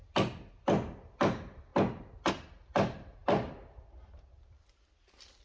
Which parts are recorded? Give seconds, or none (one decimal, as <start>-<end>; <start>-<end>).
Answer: 0.0-5.4